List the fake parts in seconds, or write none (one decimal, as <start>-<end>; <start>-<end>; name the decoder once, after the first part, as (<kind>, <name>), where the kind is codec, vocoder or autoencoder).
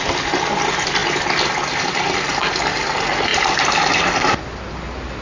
none